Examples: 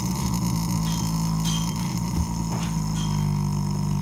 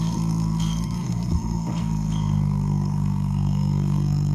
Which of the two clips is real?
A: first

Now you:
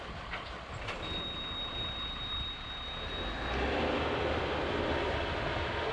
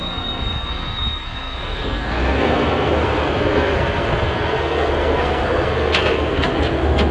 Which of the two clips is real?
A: first